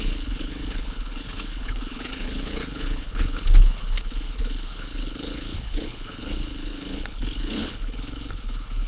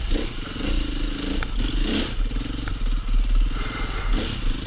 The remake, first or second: first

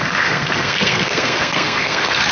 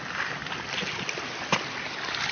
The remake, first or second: first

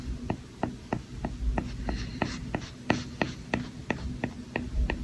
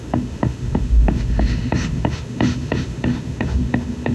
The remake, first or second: second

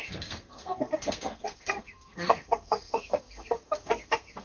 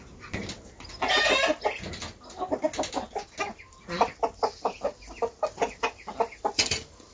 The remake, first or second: first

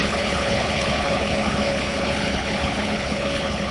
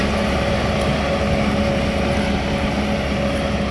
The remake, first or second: first